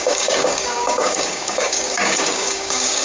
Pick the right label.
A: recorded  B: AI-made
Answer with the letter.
B